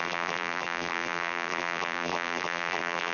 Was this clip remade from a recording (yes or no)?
yes